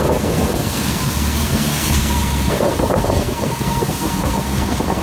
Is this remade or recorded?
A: remade